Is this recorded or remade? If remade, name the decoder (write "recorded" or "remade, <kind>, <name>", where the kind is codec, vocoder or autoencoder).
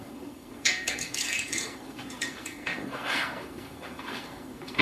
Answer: remade, codec, SNAC